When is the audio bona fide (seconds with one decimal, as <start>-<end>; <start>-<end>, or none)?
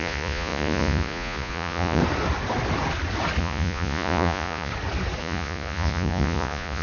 2.0-3.4; 4.7-5.2